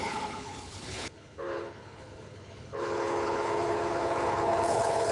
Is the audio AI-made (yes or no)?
yes